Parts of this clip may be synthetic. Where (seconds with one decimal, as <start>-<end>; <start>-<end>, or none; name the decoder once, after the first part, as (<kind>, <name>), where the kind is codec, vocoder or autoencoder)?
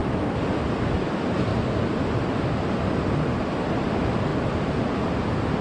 1.1-1.5 (vocoder, BigVGAN v2); 3.5-5.6